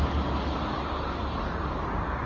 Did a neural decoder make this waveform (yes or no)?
no